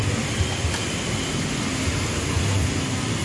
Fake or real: real